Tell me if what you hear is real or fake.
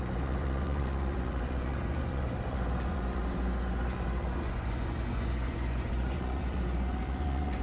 fake